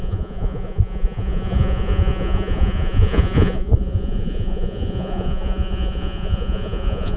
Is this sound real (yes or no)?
no